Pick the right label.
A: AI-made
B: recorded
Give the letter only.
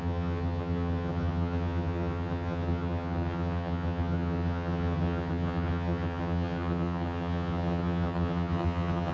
A